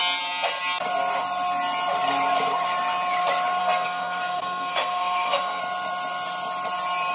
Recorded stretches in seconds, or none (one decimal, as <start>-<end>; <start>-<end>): 0.0-3.6; 5.6-7.1